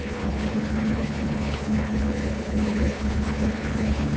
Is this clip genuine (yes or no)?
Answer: no